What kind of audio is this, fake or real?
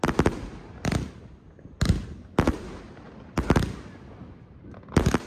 real